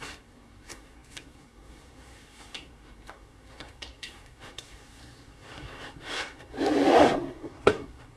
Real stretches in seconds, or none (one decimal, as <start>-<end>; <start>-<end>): none